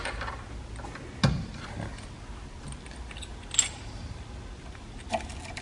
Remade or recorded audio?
recorded